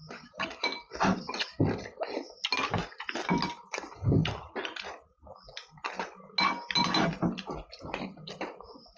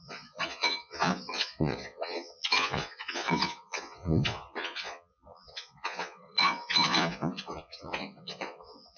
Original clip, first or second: first